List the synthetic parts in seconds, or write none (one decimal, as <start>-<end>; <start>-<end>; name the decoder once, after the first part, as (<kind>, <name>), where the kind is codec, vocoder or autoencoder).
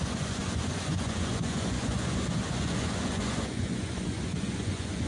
0.0-5.1 (vocoder, Vocos)